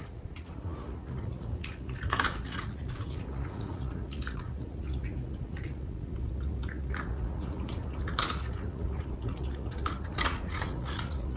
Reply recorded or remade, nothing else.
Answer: remade